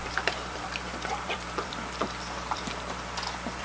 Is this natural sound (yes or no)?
no